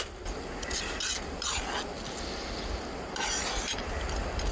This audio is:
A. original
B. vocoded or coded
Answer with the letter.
A